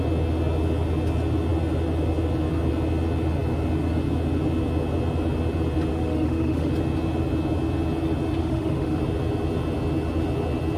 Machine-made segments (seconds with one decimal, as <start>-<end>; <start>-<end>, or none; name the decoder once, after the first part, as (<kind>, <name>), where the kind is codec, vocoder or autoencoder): 5.9-6.7 (autoencoder, DAC-VAE); 8.4-9.0